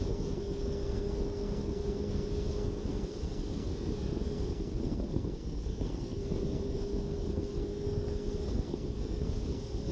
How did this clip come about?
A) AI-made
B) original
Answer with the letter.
A